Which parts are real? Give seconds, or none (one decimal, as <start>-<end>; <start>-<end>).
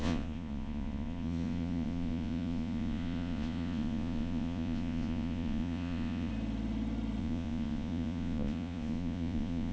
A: 6.3-7.2